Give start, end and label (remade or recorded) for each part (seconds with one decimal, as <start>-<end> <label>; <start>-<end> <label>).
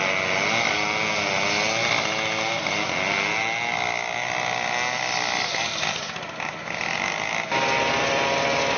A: 0.0-8.8 recorded